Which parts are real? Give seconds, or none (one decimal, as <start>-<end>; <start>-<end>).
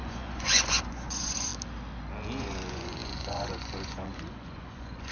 1.5-2.4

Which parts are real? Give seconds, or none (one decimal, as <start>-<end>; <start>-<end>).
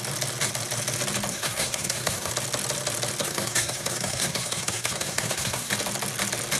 0.0-1.3; 2.3-3.2; 5.7-6.6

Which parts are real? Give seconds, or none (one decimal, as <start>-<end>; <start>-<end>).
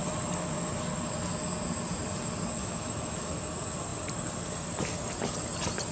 0.0-2.6; 3.4-5.9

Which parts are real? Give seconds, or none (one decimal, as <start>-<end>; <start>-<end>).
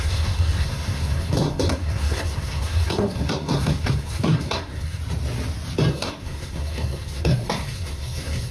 5.0-5.9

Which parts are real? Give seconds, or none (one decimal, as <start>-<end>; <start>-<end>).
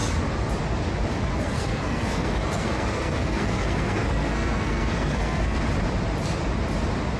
0.0-1.3; 5.6-7.2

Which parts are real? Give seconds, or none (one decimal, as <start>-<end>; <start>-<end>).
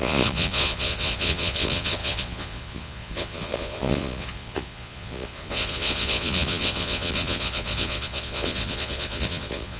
none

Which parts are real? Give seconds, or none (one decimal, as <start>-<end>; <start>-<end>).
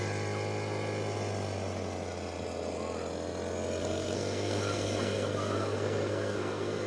0.0-3.8